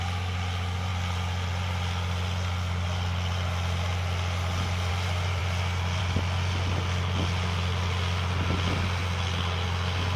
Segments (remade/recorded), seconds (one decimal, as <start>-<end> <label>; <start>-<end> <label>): 0.0-10.2 recorded